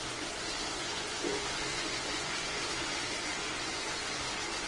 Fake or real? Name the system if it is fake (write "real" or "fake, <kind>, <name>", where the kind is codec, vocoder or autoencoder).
fake, vocoder, Vocos